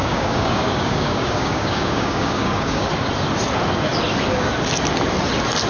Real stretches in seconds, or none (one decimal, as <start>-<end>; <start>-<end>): 2.9-5.7